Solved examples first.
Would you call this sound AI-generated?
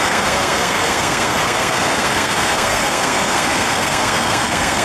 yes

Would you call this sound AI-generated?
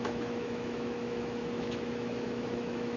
yes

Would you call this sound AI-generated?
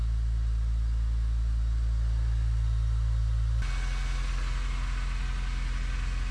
no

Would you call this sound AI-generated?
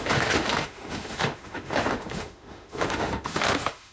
yes